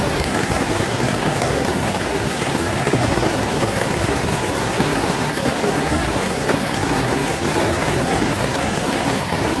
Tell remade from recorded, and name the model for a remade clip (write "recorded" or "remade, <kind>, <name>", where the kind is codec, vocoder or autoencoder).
remade, codec, SNAC